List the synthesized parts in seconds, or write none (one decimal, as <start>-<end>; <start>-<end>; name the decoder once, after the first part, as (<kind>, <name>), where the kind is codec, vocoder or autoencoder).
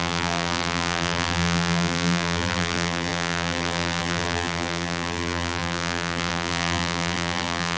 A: 0.0-7.8 (vocoder, BigVGAN v2)